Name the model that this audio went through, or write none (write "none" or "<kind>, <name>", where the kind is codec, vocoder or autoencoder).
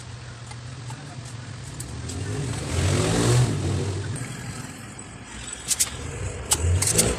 none